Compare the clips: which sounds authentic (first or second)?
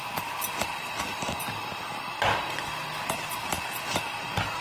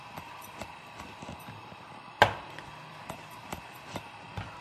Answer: first